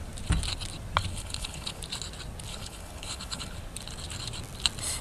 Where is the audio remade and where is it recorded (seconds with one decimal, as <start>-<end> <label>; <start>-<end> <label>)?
0.0-1.1 recorded; 1.1-1.8 remade; 1.8-2.5 recorded; 2.5-3.6 remade; 3.6-5.0 recorded